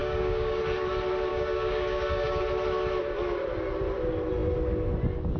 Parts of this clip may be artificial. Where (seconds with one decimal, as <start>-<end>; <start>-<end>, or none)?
0.0-0.6; 1.3-2.4